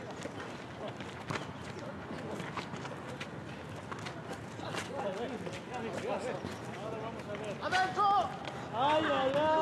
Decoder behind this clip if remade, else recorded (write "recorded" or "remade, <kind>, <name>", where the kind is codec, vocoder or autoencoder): recorded